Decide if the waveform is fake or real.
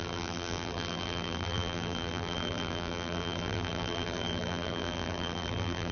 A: fake